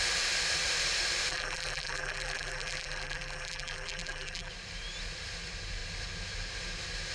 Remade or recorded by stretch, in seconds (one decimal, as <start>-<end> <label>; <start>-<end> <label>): 0.0-1.3 recorded; 1.3-4.5 remade; 4.5-7.1 recorded